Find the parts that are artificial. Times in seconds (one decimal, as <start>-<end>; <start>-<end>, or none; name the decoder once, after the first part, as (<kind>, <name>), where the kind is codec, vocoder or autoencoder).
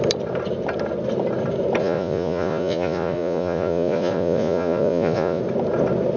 1.8-5.4 (vocoder, Vocos)